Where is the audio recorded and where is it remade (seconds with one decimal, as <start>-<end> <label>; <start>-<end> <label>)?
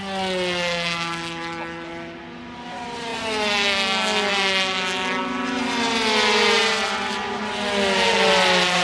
0.0-8.8 recorded